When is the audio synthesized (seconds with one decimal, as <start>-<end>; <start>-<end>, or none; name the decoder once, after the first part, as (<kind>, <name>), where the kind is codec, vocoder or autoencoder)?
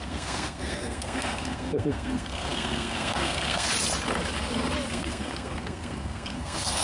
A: 0.0-3.7 (codec, SNAC); 4.9-6.8